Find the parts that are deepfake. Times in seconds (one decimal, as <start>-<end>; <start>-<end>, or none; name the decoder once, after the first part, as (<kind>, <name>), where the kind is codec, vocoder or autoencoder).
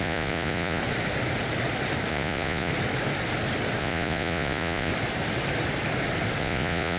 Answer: 0.0-0.8 (vocoder, Vocos); 2.1-2.7; 3.8-4.9; 6.4-7.0